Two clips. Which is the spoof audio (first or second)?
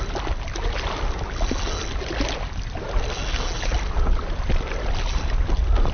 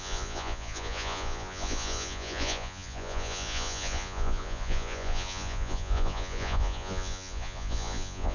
second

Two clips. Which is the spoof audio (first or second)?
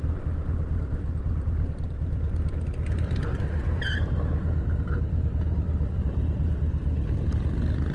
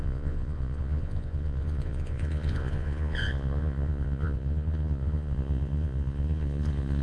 second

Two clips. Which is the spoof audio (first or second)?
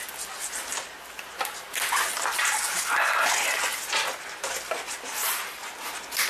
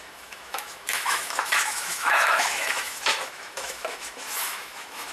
second